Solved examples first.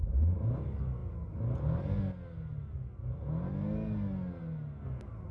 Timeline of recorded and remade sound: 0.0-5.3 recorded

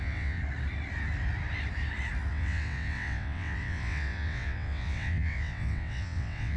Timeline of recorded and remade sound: 0.0-0.4 remade; 0.4-2.3 recorded; 2.3-6.6 remade

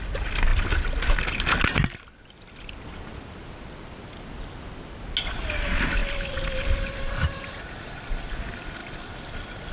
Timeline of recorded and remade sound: 0.0-9.7 recorded

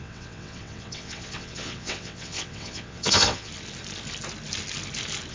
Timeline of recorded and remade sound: 0.0-3.5 remade; 3.5-5.3 recorded

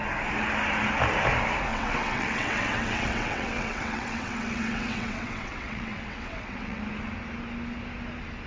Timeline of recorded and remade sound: 0.0-1.7 recorded; 1.7-6.8 remade; 6.8-8.5 recorded

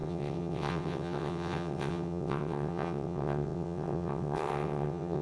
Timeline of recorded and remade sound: 0.0-5.2 remade

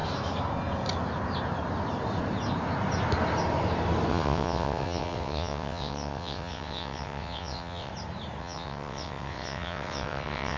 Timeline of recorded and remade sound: 0.0-4.1 recorded; 4.1-7.9 remade; 7.9-8.4 recorded; 8.4-10.6 remade

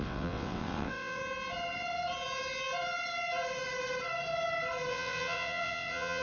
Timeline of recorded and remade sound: 0.0-1.2 remade; 1.2-4.9 recorded; 4.9-6.2 remade